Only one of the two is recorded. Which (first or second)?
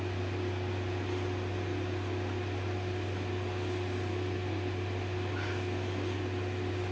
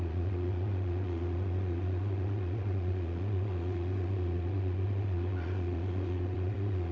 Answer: first